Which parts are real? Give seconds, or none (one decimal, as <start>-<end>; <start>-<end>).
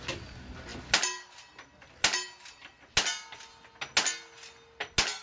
0.0-5.2